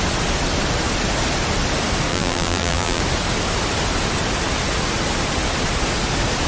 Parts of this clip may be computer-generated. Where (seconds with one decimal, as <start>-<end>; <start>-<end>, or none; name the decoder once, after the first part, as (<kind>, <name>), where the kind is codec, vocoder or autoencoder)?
2.1-3.0 (vocoder, BigVGAN v2)